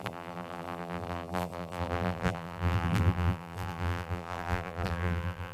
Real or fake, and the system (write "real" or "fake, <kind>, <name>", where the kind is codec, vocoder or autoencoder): fake, vocoder, BigVGAN v2